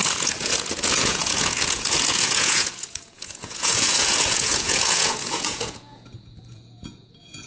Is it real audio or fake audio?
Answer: fake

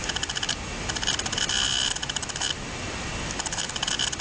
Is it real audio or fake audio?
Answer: real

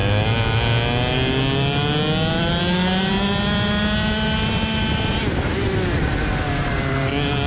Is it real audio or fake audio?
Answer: real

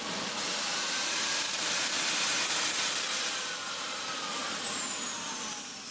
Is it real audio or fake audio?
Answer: real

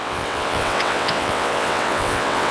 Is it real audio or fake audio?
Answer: fake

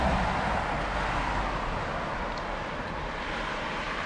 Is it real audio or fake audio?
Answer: real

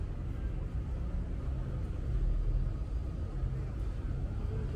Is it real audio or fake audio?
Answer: real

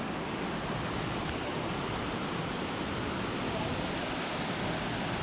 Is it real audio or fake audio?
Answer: real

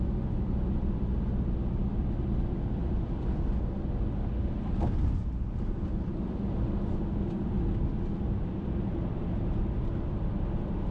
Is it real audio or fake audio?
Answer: real